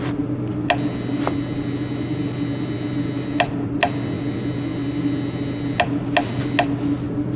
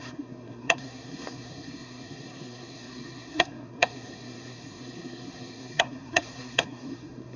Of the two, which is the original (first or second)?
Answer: first